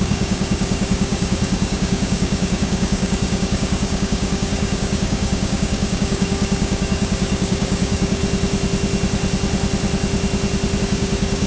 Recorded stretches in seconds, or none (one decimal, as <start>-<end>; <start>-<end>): 8.2-10.8